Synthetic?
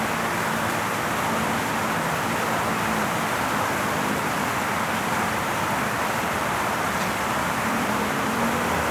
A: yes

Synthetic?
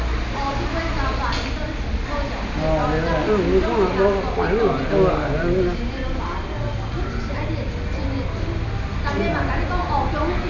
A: no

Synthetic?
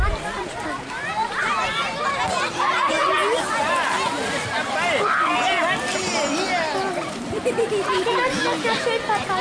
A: no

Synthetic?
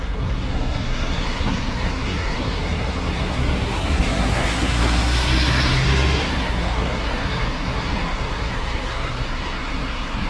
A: yes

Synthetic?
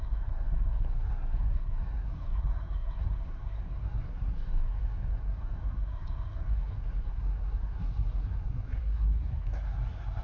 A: yes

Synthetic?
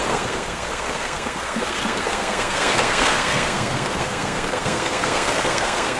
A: yes